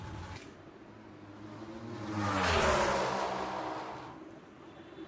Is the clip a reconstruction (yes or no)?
no